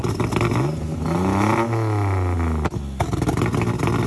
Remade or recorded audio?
recorded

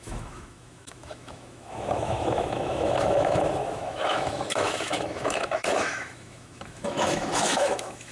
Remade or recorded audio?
remade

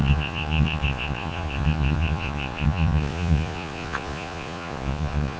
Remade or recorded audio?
remade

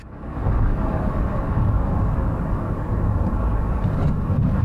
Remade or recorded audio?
remade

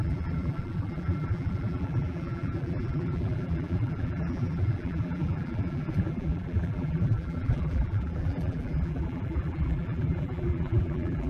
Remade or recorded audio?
remade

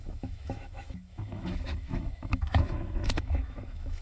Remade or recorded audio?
remade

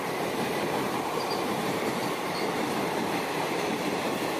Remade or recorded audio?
remade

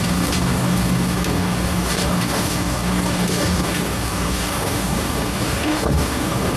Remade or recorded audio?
remade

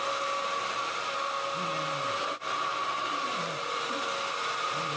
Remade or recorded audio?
recorded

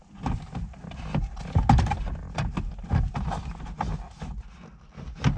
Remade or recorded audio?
recorded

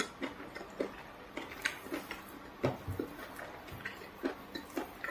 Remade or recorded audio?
recorded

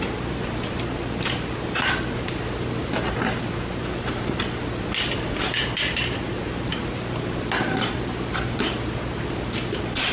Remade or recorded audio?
recorded